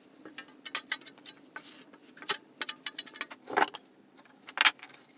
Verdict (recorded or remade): recorded